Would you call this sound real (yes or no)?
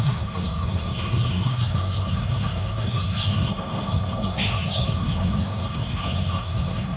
no